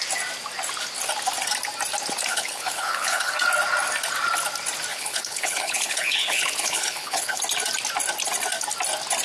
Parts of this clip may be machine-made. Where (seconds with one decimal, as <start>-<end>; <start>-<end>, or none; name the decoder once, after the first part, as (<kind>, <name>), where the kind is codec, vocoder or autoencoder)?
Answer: 2.3-3.3 (codec, HILCodec); 4.9-7.4